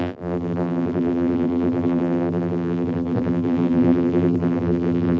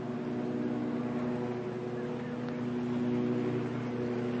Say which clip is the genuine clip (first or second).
second